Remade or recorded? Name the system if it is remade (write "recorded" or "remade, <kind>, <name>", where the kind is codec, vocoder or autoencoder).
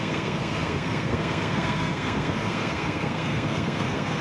remade, codec, SNAC